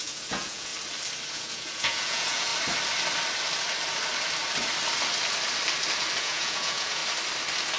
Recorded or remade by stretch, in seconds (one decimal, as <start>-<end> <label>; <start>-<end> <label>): 0.0-0.7 remade; 0.7-1.3 recorded; 1.3-2.5 remade; 2.5-6.2 recorded; 6.2-7.0 remade; 7.0-7.8 recorded